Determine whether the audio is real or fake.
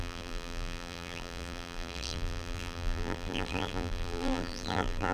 fake